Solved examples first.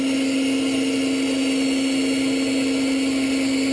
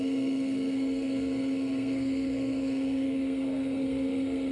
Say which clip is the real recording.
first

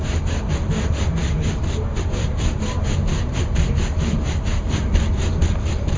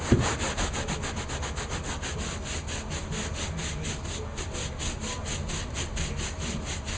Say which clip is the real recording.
second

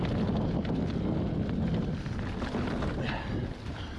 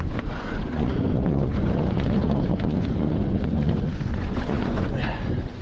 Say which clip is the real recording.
first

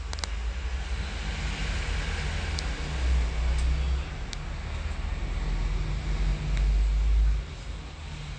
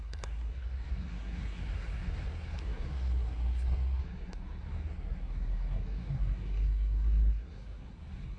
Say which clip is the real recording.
first